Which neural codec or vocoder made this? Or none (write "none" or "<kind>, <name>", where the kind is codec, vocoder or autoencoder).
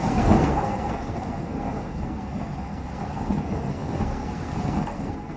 codec, SNAC